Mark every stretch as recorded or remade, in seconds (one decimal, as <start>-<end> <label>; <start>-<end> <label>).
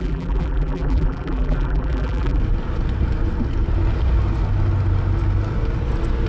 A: 0.0-2.4 remade; 2.4-6.3 recorded